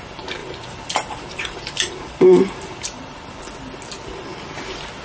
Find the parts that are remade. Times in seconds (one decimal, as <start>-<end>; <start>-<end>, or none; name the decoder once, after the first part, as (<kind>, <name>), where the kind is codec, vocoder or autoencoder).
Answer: 0.4-3.4 (vocoder, BigVGAN v2)